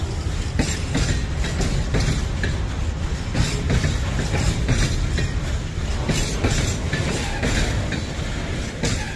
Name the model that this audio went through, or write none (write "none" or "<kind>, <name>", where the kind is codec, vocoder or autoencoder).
none